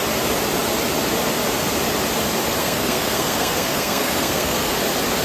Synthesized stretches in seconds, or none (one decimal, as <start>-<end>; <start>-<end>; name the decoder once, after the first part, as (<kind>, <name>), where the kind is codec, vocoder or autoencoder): 2.6-4.7 (codec, SNAC)